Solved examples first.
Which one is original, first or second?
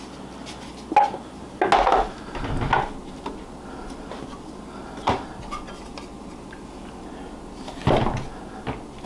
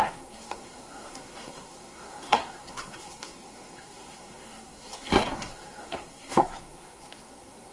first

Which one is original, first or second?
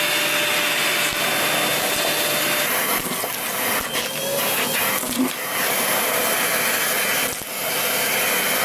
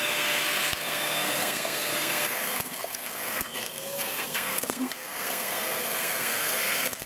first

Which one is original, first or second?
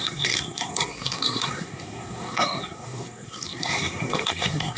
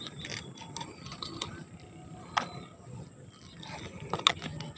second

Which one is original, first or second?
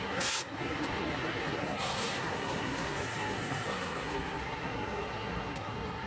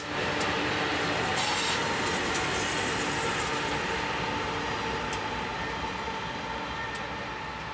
second